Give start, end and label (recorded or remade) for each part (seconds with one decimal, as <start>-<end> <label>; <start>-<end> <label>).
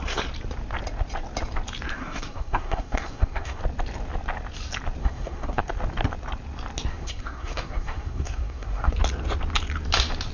0.0-1.9 recorded; 1.9-3.6 remade; 3.6-5.0 recorded; 5.0-5.6 remade; 5.6-6.9 recorded; 6.9-8.9 remade; 8.9-10.3 recorded